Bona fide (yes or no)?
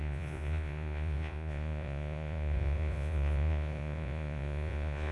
no